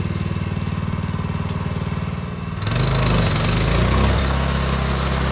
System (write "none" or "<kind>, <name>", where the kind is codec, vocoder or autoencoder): none